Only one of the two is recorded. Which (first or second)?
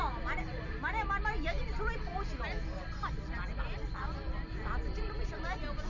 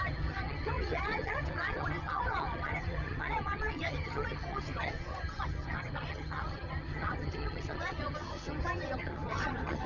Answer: first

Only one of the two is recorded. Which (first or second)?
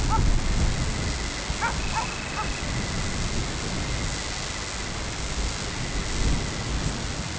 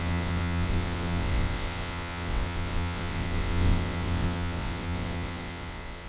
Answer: first